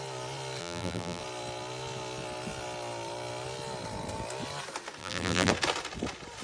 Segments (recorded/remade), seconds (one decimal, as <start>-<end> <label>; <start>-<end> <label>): 0.0-0.6 recorded; 0.6-1.2 remade; 1.2-5.0 recorded; 5.0-5.5 remade; 5.5-6.4 recorded